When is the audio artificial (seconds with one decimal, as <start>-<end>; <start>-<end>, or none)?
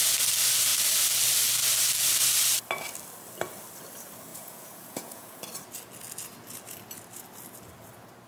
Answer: 4.3-5.4